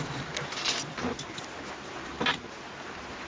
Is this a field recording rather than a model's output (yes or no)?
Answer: yes